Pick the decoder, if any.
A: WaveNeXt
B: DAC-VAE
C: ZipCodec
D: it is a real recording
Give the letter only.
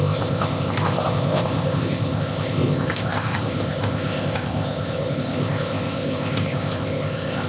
C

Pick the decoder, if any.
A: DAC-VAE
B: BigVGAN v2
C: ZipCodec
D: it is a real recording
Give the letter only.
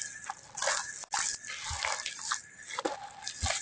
D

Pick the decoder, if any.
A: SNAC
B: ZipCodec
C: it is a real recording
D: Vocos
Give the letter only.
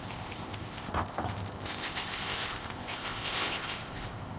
B